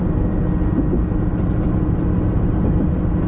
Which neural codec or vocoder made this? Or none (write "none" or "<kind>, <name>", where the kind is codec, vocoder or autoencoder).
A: none